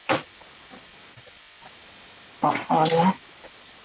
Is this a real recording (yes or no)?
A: yes